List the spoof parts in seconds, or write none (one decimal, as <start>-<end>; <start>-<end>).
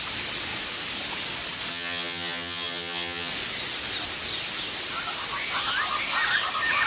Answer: 1.7-3.3